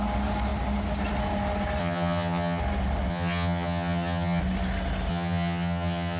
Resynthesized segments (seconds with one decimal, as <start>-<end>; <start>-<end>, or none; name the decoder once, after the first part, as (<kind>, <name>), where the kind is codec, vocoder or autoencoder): 1.8-2.6 (vocoder, HiFi-GAN); 3.1-4.4; 5.1-6.2